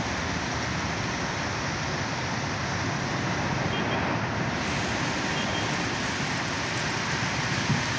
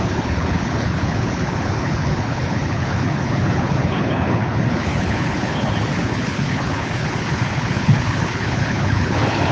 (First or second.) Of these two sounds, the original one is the first